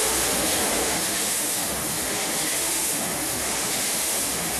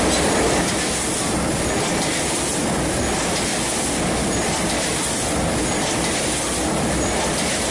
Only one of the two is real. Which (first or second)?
second